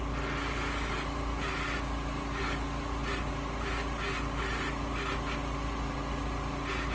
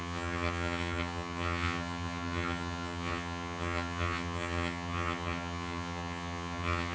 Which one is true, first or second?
first